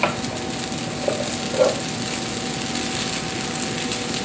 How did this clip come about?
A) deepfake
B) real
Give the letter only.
B